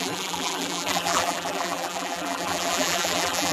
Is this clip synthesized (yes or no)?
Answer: yes